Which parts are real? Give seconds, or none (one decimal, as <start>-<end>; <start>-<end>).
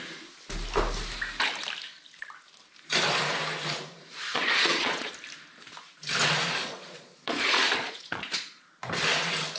0.0-4.3; 5.1-6.6; 8.7-9.6